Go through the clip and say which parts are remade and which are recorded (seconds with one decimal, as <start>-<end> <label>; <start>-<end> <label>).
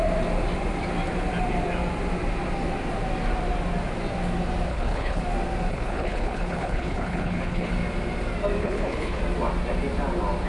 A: 0.0-4.7 recorded; 4.7-5.2 remade; 5.2-5.7 recorded; 5.7-7.7 remade; 7.7-8.6 recorded; 8.6-9.2 remade; 9.2-10.5 recorded